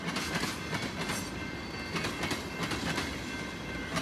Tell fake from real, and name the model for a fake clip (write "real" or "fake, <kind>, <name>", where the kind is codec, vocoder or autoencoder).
real